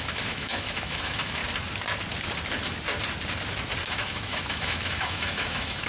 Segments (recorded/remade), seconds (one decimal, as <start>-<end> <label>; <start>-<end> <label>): 0.0-1.4 remade; 1.4-3.9 recorded; 3.9-5.9 remade